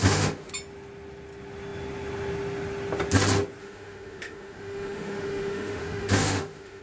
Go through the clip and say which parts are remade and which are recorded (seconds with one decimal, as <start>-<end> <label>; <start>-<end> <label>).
0.0-0.5 remade; 0.5-3.6 recorded; 3.6-6.8 remade